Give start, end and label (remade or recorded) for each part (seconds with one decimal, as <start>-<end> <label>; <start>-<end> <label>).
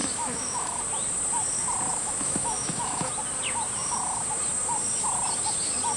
0.0-0.8 remade; 0.8-1.9 recorded; 1.9-3.1 remade; 3.1-6.0 recorded